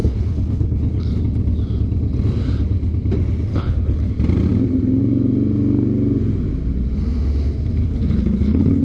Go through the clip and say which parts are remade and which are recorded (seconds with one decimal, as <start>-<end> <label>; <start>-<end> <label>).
0.0-1.2 remade; 1.2-3.5 recorded; 3.5-4.1 remade; 4.1-7.8 recorded; 7.8-8.8 remade